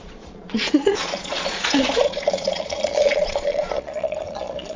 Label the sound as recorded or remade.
remade